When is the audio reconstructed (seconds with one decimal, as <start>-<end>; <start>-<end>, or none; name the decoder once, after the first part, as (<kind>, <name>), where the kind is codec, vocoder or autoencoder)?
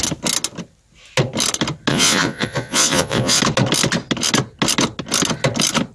1.9-3.4 (vocoder, Vocos)